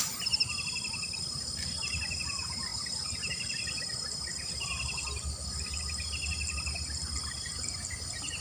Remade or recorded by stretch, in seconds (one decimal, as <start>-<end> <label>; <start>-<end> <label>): 0.0-8.4 recorded